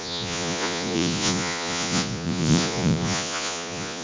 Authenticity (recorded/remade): remade